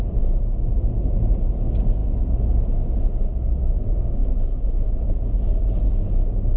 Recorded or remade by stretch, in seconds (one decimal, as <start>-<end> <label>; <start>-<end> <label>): 0.0-4.2 recorded; 4.2-5.1 remade; 5.1-6.6 recorded